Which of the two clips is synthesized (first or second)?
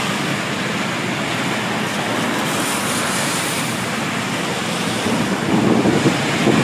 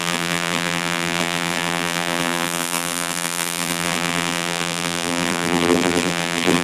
second